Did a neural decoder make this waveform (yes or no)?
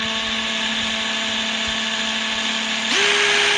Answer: no